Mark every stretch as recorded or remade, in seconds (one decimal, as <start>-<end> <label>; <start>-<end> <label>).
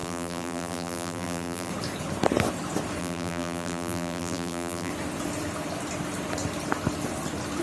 0.0-1.7 remade; 1.7-3.0 recorded; 3.0-4.9 remade; 4.9-7.6 recorded